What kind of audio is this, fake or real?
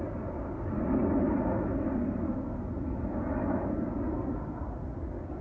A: real